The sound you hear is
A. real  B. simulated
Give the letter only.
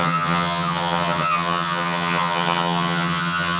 B